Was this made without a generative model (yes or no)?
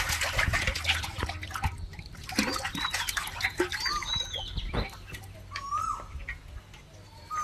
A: yes